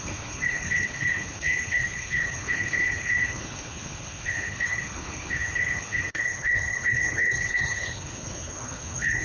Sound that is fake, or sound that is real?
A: fake